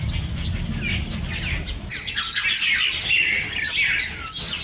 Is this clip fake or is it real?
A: real